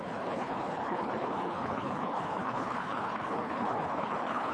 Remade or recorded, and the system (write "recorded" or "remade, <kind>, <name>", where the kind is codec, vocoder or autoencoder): remade, codec, HILCodec